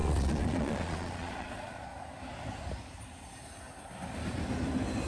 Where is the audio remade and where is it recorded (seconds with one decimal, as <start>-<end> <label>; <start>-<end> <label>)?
0.0-1.9 remade; 1.9-5.1 recorded